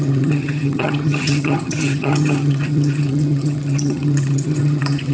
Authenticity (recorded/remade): remade